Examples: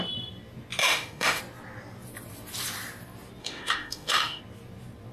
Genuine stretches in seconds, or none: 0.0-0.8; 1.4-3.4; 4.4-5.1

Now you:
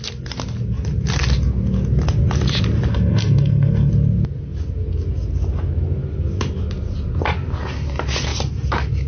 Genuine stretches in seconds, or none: 0.0-2.9; 3.9-9.1

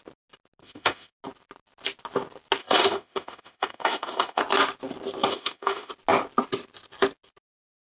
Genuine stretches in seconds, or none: 0.0-0.6; 1.1-2.6; 4.4-5.3; 5.9-7.8

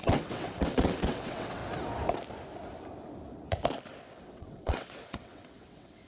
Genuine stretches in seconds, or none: 1.6-4.2

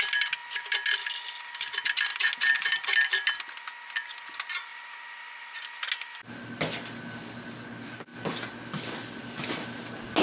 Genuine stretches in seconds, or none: 0.0-2.1; 3.4-4.7; 5.6-10.2

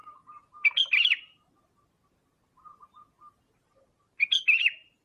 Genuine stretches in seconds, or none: 0.0-5.0